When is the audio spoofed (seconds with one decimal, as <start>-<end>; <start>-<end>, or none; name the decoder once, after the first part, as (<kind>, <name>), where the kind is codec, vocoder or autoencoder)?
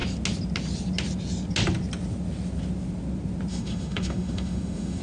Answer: 3.5-5.0 (autoencoder, DAC-VAE)